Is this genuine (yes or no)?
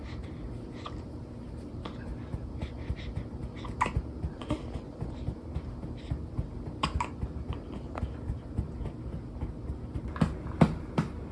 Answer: yes